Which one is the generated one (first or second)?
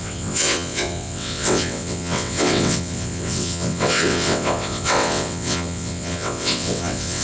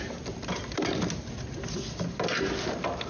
first